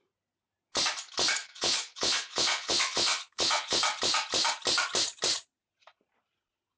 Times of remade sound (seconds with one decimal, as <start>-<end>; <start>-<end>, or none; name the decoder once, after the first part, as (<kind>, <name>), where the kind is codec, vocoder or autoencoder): 1.4-3.8 (vocoder, Vocos)